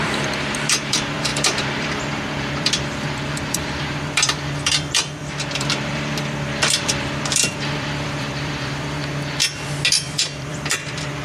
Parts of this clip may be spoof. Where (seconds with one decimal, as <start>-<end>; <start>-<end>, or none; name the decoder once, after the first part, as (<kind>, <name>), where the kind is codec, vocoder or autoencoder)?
0.0-9.0 (vocoder, BigVGAN v2); 9.9-11.2